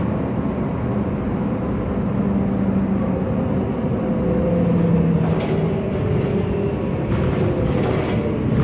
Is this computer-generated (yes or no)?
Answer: no